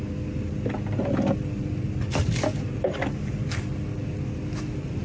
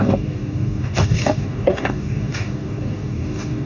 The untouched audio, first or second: first